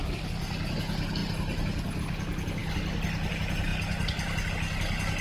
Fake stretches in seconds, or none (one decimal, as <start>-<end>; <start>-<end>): none